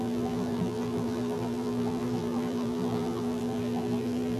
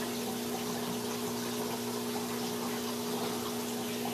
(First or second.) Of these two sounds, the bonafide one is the second